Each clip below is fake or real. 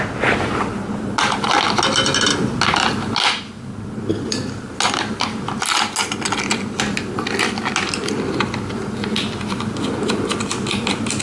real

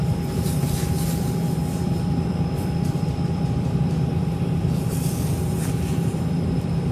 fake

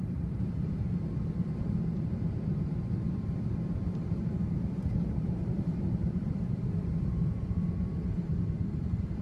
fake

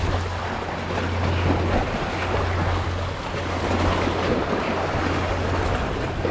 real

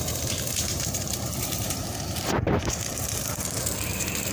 fake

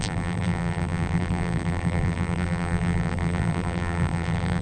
fake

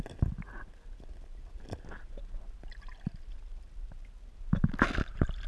real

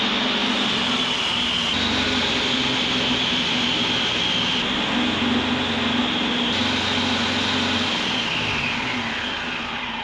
real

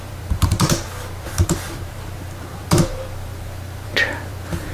fake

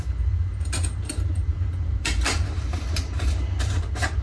fake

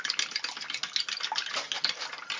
real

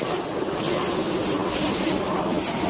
real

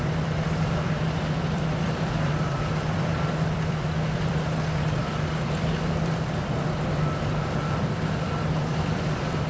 fake